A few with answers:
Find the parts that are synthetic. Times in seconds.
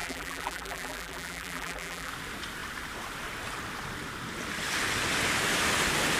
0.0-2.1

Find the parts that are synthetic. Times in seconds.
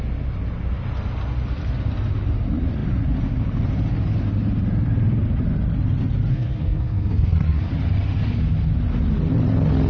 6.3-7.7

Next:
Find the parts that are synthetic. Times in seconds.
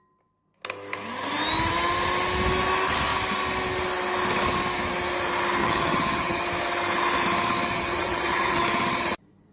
5.6-6.4; 7.7-8.6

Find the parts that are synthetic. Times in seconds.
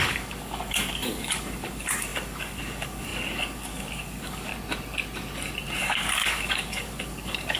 0.0-4.5; 5.8-7.6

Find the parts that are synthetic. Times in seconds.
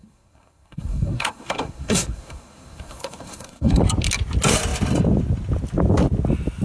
0.0-3.8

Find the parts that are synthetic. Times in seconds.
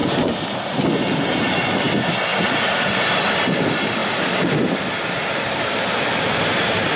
0.0-0.9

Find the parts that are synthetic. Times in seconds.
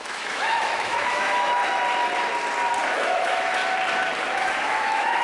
0.0-1.6; 2.9-3.6; 4.2-5.2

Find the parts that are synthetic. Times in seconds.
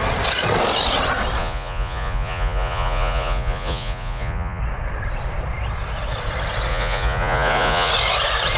1.4-4.6; 6.7-7.9